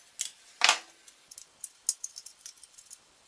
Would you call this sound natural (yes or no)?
yes